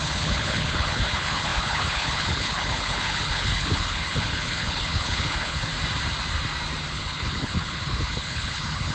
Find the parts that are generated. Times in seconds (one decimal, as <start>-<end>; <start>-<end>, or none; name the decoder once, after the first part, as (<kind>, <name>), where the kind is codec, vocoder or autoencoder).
0.0-5.7 (codec, HILCodec); 6.9-8.9